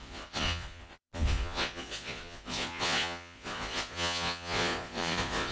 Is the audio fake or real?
fake